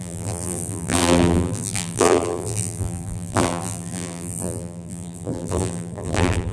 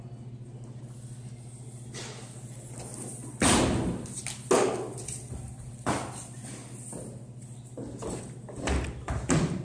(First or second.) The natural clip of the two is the second